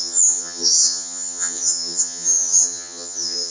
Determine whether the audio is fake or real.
fake